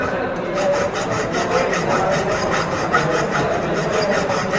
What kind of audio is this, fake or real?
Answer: fake